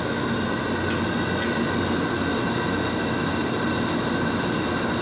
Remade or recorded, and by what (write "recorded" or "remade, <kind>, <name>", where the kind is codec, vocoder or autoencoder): recorded